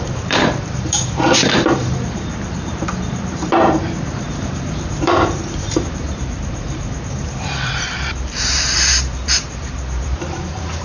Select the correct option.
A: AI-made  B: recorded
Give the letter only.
A